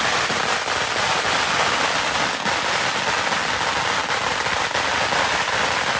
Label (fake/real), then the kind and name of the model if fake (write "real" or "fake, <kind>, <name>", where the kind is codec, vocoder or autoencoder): real